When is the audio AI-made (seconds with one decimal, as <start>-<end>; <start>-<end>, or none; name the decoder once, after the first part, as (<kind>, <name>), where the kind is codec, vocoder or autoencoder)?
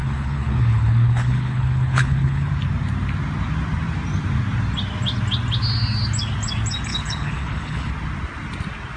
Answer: 0.0-2.5 (codec, HILCodec); 6.9-7.9